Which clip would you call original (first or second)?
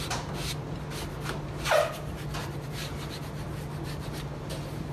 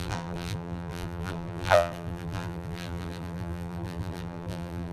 first